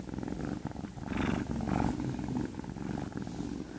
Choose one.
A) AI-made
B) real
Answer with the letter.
B